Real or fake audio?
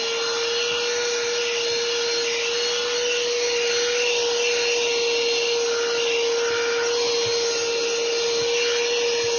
real